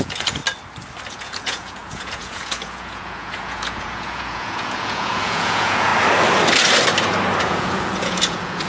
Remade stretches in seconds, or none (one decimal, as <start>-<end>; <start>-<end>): 0.0-0.4; 1.1-5.9; 7.4-8.7